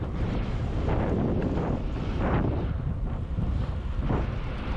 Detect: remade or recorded remade